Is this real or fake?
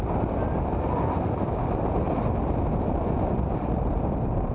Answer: real